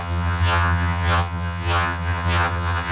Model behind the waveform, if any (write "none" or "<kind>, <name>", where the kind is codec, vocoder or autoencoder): vocoder, HiFi-GAN